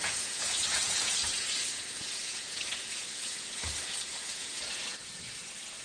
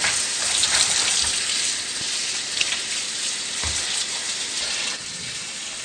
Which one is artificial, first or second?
first